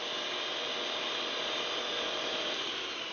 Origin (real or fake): real